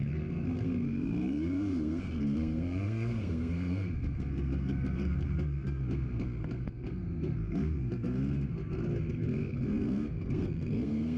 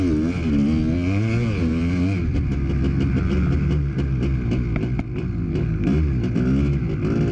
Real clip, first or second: second